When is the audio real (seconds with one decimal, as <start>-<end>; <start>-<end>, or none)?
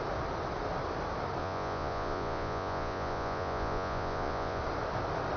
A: 0.0-1.4; 4.6-5.4